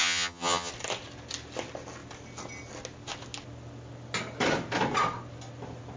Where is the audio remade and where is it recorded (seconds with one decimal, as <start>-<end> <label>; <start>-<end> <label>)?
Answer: 0.0-0.7 remade; 0.7-6.0 recorded